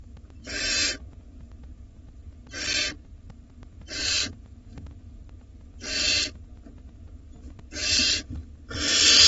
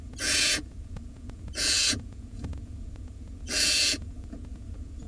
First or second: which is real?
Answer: first